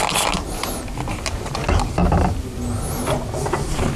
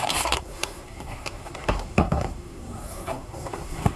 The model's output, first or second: second